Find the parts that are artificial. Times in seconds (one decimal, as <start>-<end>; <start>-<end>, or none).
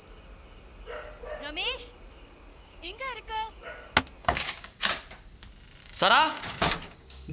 2.5-3.6; 4.2-4.9; 5.8-7.3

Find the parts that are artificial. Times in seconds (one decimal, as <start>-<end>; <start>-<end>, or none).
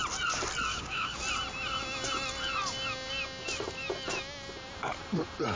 0.7-1.2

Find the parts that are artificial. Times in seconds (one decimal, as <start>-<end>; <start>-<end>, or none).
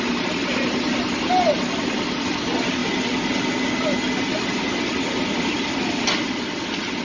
none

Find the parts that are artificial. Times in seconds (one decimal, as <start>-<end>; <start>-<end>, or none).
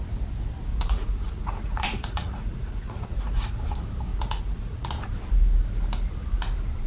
0.7-3.6; 4.1-4.9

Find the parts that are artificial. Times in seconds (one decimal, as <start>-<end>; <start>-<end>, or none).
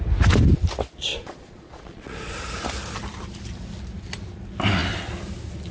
1.1-2.3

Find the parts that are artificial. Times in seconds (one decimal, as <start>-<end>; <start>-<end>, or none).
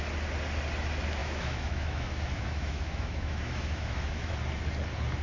1.2-4.3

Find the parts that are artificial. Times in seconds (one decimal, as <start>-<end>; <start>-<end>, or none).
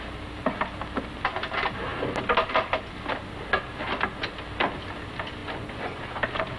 5.4-6.0